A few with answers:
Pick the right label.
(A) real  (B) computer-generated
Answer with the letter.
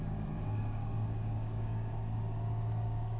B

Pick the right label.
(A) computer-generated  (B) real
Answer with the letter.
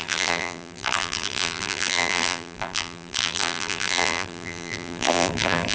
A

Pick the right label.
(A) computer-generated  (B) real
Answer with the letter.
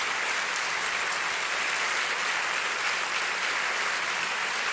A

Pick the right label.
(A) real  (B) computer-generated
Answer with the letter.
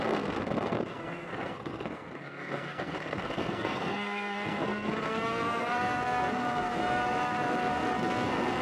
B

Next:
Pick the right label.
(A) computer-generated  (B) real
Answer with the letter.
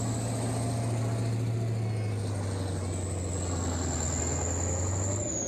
B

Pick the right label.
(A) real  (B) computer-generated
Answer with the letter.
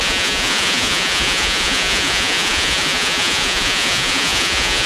B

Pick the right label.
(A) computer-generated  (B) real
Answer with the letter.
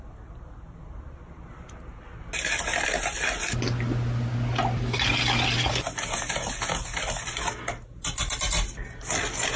B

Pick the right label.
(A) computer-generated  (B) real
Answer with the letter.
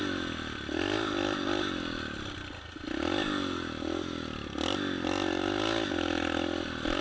B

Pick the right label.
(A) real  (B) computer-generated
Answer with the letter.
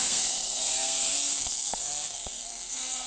B